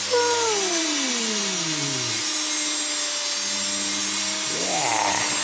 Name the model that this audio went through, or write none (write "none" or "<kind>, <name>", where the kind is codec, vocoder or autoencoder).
none